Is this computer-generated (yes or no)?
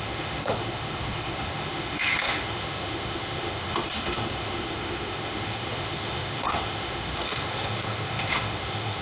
yes